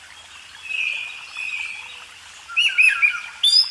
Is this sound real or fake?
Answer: real